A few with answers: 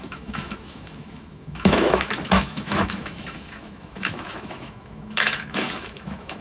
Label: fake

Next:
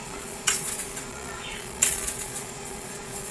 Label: fake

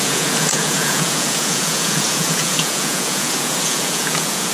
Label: fake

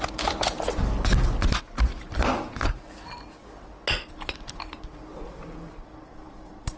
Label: real